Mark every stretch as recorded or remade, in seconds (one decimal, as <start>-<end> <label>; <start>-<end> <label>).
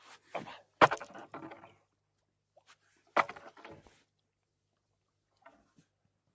0.0-6.3 recorded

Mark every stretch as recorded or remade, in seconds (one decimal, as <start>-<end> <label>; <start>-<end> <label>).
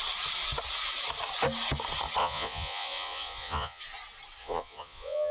0.0-2.2 recorded; 2.2-3.8 remade; 3.8-4.4 recorded; 4.4-5.3 remade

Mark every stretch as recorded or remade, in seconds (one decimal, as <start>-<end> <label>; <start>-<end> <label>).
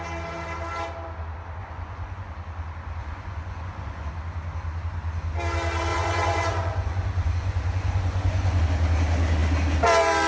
0.0-1.6 recorded; 1.6-2.3 remade; 2.3-3.0 recorded; 3.0-4.1 remade; 4.1-5.9 recorded; 5.9-8.6 remade; 8.6-10.3 recorded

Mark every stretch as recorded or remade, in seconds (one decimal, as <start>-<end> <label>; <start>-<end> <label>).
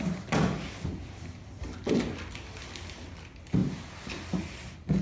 0.0-5.0 recorded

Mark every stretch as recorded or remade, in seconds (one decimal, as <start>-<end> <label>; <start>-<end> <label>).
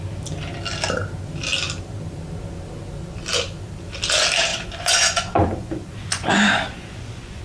0.0-4.5 recorded; 4.5-7.4 remade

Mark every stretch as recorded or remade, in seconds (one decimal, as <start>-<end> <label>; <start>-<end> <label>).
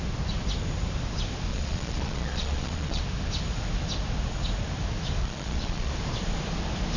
0.0-1.5 recorded; 1.5-3.0 remade; 3.0-5.2 recorded; 5.2-5.9 remade; 5.9-7.0 recorded